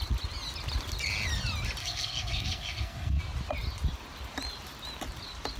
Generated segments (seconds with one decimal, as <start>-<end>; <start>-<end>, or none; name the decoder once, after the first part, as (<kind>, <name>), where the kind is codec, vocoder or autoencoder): 1.8-3.2 (codec, SNAC)